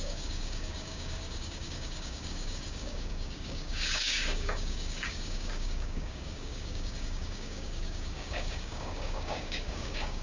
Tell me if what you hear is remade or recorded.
remade